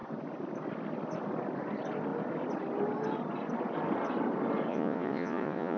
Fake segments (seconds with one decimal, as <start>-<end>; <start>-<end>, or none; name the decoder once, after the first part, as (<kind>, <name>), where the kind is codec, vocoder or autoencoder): 4.7-5.8 (vocoder, Vocos)